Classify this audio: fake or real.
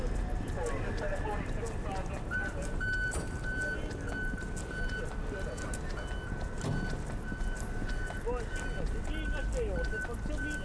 real